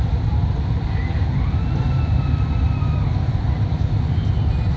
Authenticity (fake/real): real